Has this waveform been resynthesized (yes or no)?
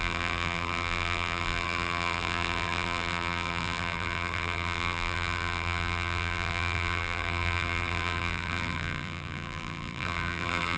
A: yes